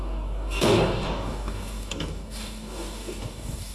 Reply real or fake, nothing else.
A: fake